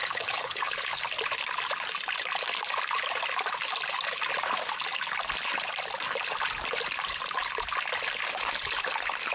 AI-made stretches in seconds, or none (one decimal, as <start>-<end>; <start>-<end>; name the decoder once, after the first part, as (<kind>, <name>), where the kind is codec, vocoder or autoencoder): 0.0-1.0 (codec, HILCodec)